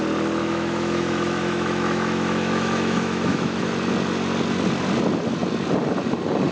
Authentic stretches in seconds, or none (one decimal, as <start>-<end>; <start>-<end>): 0.0-0.4; 3.7-6.5